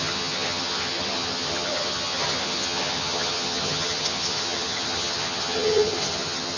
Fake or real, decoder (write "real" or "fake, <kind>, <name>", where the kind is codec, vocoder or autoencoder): fake, vocoder, HiFi-GAN